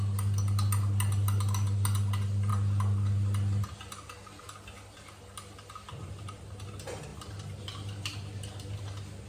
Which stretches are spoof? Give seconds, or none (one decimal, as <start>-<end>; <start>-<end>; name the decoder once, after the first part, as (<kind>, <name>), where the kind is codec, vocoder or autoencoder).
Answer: none